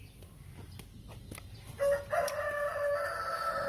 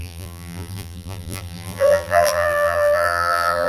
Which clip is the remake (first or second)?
second